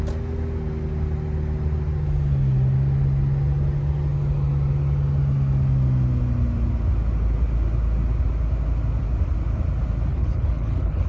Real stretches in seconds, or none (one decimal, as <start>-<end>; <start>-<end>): 0.0-10.1